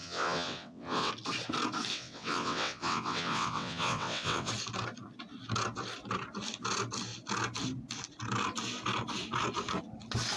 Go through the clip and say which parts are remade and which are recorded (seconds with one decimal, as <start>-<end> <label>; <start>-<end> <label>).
0.0-1.1 remade; 1.1-1.9 recorded; 1.9-4.5 remade; 4.5-10.4 recorded